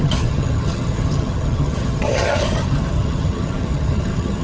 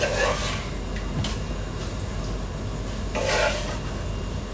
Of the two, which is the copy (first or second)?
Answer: first